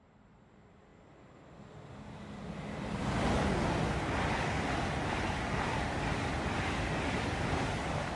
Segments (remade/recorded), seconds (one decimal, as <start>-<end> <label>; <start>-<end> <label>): 0.0-8.2 recorded